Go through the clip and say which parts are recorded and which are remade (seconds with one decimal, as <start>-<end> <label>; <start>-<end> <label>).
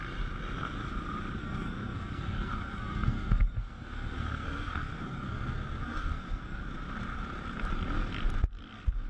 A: 0.0-1.4 recorded; 1.4-6.6 remade; 6.6-9.1 recorded